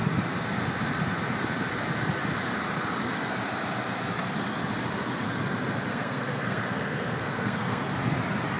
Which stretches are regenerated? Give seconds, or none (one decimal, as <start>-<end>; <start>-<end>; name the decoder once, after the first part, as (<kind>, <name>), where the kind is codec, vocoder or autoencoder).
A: 5.9-7.8 (codec, SNAC)